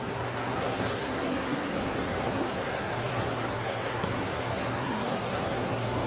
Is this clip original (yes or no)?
no